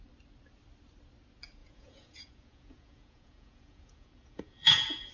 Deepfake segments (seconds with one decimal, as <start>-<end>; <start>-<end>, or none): 1.6-5.1